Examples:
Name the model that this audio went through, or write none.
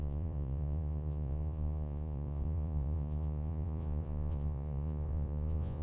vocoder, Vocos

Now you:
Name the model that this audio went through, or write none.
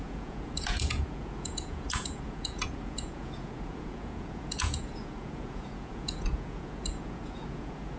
vocoder, Vocos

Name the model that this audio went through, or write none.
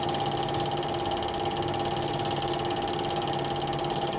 none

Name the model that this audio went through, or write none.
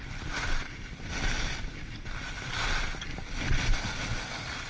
none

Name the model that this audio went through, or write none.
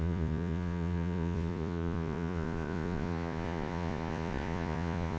vocoder, Vocos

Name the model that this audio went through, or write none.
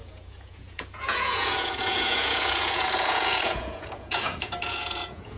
vocoder, Vocos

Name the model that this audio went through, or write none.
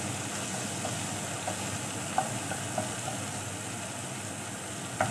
none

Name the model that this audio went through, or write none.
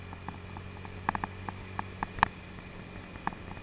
none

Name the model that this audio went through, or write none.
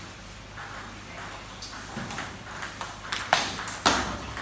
none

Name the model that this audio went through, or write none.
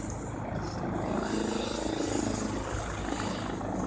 none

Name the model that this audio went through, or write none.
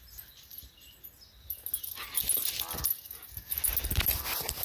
none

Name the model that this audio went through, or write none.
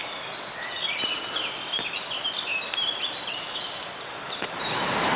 none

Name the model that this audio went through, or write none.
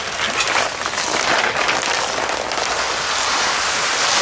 none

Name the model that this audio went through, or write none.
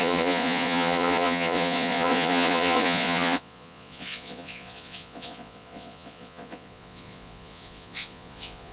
vocoder, Vocos